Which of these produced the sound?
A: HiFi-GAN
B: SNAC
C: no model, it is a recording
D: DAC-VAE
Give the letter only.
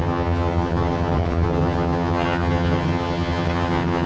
A